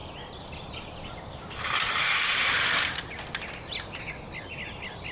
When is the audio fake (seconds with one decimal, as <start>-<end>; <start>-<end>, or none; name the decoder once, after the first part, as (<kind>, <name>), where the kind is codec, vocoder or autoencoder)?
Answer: 0.0-3.1 (vocoder, BigVGAN v2)